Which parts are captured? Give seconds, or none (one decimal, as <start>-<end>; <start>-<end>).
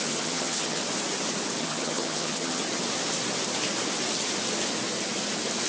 0.8-1.6; 2.6-5.7